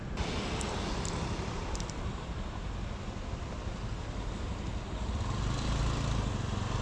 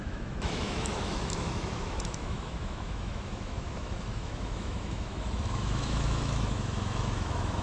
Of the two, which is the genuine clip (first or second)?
first